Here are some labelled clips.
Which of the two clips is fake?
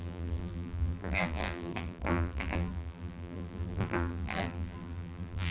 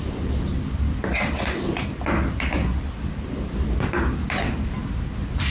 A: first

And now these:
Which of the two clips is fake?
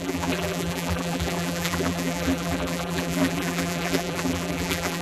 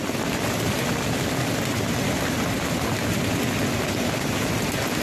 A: first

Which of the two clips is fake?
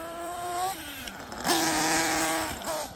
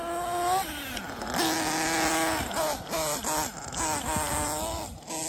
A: first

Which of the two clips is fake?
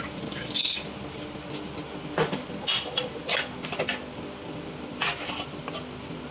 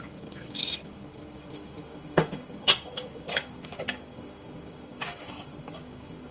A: second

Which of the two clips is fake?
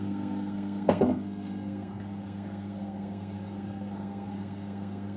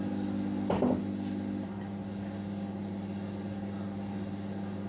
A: first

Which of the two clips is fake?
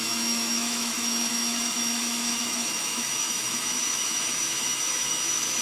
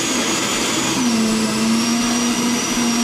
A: first